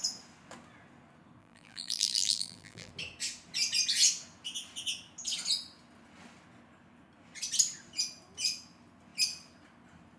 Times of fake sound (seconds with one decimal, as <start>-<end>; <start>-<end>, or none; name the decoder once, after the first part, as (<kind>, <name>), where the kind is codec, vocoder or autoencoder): 1.4-2.9 (vocoder, BigVGAN v2)